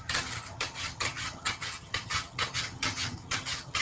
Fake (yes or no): yes